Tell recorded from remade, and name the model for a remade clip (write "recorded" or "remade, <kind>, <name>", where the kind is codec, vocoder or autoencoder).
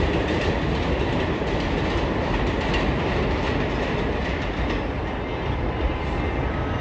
recorded